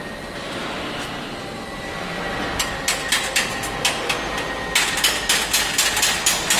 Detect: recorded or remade recorded